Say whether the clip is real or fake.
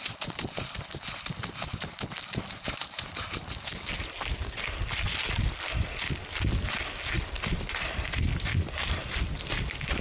real